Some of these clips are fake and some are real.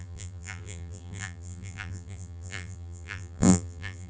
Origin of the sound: fake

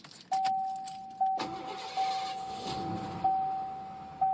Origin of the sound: real